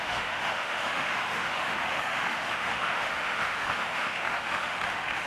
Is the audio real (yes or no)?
no